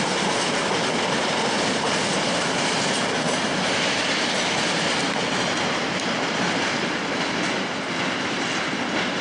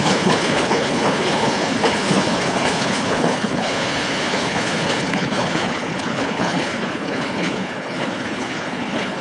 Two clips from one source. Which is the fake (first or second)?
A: second